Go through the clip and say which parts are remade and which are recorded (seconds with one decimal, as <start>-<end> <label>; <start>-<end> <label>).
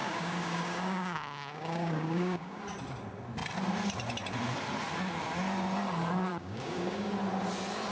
0.0-2.6 remade; 2.6-6.3 recorded; 6.3-7.1 remade; 7.1-7.9 recorded